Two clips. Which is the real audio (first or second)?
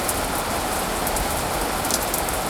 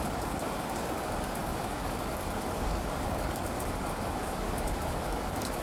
first